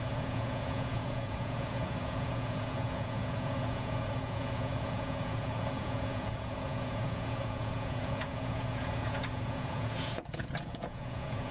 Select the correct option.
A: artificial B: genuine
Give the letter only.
A